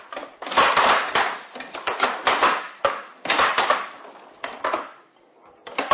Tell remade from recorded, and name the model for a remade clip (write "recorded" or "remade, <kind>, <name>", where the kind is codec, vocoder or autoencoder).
recorded